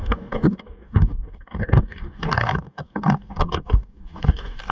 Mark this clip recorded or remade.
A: remade